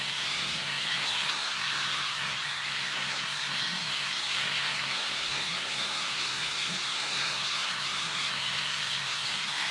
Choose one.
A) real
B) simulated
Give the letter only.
B